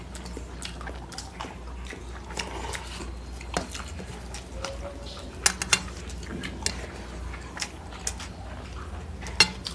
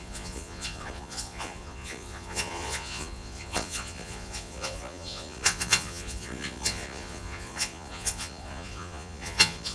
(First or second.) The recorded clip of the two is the first